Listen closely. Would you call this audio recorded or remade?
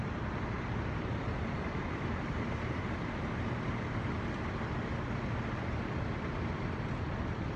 recorded